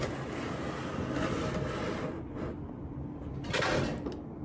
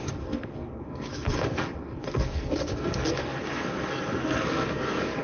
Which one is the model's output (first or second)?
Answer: second